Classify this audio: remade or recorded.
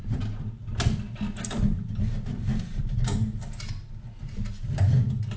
recorded